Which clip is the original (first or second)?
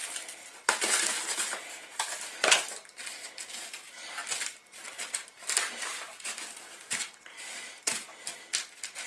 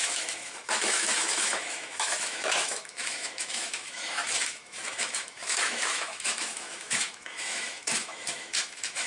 first